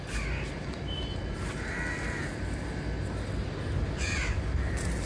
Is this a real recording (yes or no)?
yes